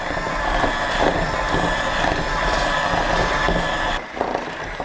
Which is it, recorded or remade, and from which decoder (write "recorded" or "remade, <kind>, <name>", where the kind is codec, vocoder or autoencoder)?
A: remade, vocoder, BigVGAN v2